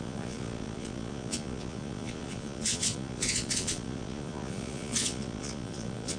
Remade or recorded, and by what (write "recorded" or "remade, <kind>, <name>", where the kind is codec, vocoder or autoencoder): remade, vocoder, Vocos